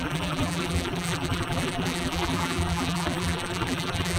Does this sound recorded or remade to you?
remade